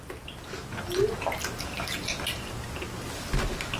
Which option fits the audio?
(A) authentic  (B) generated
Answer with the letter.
A